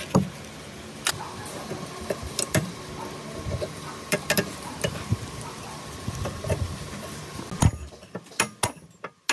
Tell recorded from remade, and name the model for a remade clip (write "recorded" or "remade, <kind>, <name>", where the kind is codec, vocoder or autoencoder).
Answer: recorded